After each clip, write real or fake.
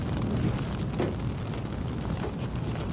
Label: real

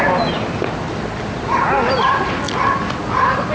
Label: real